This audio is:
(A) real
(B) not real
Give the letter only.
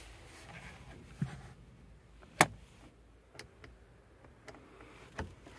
A